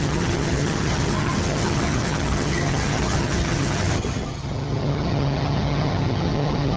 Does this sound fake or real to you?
fake